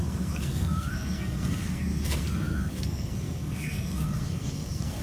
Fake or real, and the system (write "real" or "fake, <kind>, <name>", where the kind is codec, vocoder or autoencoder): fake, codec, SNAC